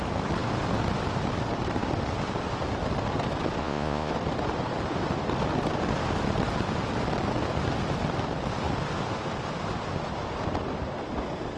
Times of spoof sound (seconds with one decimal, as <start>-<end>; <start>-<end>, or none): 3.6-4.1